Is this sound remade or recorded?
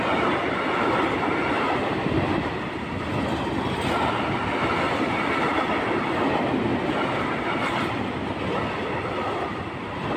recorded